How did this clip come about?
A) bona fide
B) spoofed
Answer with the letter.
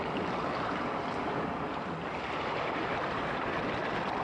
A